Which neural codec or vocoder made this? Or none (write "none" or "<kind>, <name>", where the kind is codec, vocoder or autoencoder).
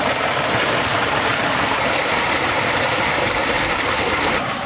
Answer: vocoder, BigVGAN v2